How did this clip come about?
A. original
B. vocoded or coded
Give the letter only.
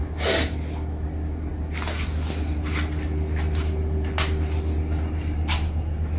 A